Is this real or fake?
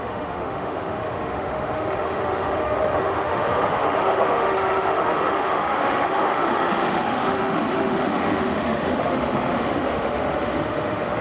fake